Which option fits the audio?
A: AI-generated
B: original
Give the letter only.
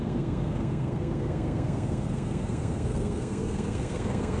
A